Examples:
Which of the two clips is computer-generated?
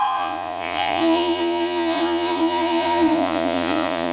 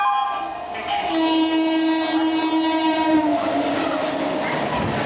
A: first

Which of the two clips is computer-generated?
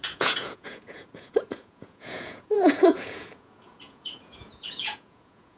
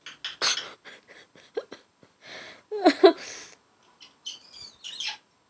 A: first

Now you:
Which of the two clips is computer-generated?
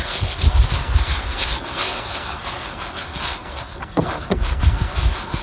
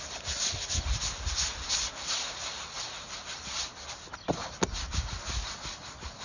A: first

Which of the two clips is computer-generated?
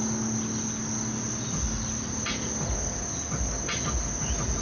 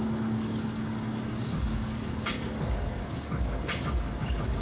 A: second